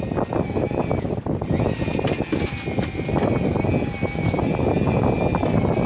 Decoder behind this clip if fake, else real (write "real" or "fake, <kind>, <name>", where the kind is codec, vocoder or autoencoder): real